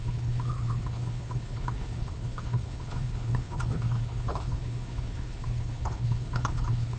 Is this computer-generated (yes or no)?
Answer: yes